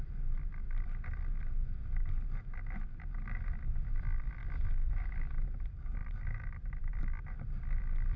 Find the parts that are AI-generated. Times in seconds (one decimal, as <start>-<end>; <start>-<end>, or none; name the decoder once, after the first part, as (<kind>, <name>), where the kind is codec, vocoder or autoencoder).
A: none